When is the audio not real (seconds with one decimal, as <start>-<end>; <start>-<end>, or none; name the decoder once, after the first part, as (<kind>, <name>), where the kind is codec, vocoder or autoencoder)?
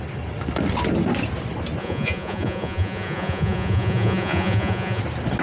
1.8-5.0 (vocoder, Vocos)